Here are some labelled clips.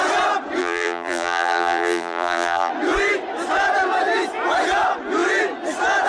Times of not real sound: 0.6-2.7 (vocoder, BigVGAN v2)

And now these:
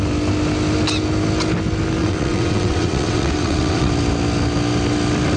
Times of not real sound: 2.0-3.9 (vocoder, WaveNeXt)